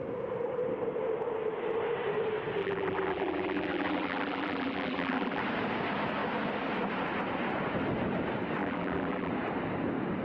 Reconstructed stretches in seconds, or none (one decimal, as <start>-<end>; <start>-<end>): 2.6-5.4; 8.6-9.3